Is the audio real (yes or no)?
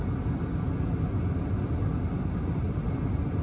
no